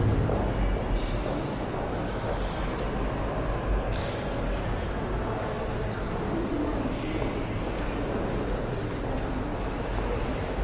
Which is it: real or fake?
real